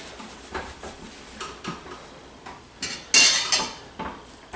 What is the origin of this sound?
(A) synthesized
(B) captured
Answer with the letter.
B